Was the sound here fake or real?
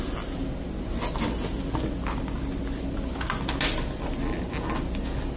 real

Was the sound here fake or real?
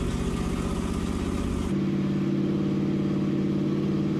real